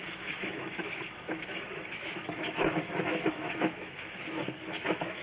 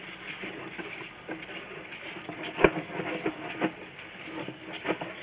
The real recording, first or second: second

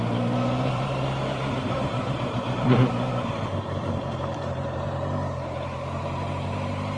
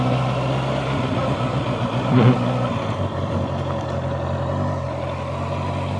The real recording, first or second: second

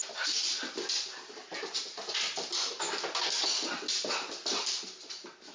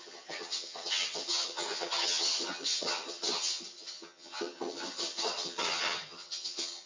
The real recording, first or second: first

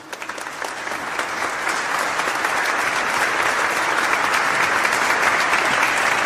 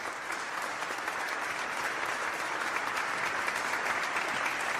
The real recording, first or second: first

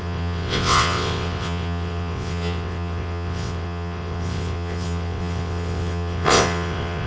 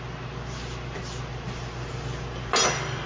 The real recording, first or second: second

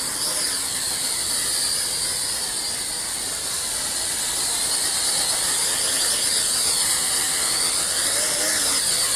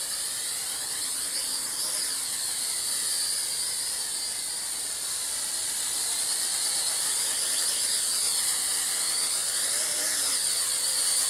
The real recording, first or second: first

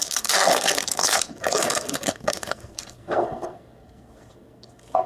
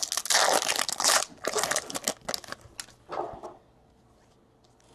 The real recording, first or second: second